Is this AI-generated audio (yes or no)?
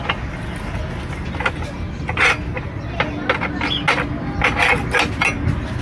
no